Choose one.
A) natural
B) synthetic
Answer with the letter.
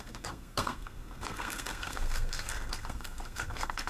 B